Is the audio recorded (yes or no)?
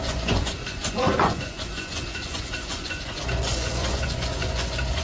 no